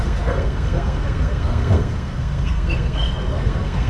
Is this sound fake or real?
fake